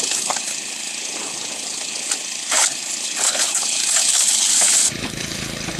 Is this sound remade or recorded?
remade